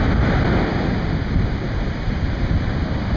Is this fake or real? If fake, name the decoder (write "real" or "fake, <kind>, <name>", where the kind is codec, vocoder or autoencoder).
fake, vocoder, BigVGAN v2